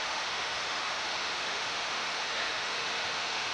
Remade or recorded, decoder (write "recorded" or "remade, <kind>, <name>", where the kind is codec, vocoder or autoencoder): remade, autoencoder, DAC-VAE